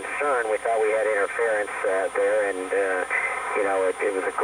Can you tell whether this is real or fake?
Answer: real